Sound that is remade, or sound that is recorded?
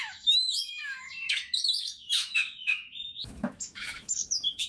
remade